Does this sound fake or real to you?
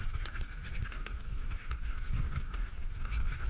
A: fake